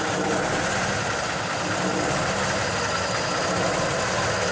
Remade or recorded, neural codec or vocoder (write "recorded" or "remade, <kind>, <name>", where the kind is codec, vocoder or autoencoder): recorded